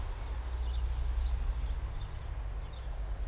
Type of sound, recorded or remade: recorded